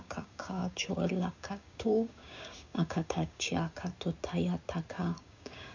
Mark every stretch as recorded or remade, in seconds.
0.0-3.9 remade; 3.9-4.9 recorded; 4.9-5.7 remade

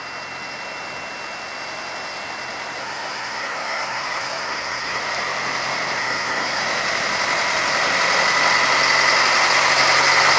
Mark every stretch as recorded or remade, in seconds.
0.0-2.8 recorded; 2.8-5.0 remade; 5.0-6.0 recorded; 6.0-6.6 remade; 6.6-10.4 recorded

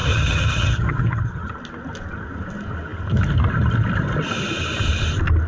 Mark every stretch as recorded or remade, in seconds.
0.0-1.5 remade; 1.5-5.5 recorded

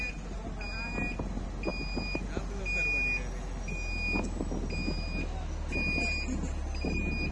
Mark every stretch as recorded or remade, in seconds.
0.0-7.3 recorded